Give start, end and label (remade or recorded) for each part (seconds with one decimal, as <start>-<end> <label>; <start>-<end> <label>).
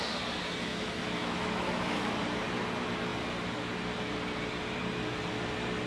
0.0-0.7 recorded; 0.7-2.2 remade; 2.2-5.9 recorded